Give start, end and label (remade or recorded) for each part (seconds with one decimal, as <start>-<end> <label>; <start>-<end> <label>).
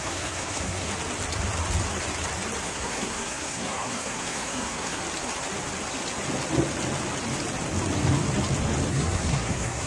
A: 0.0-0.9 remade; 0.9-2.6 recorded; 2.6-5.0 remade; 5.0-8.9 recorded; 8.9-9.9 remade